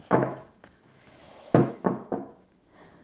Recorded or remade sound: remade